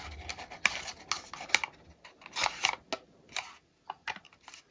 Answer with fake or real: real